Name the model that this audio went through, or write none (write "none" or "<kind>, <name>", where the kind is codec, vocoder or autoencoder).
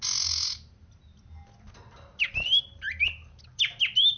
none